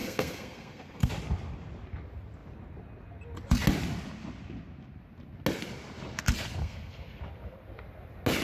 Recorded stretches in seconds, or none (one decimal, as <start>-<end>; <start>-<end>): 1.1-6.6; 7.2-8.4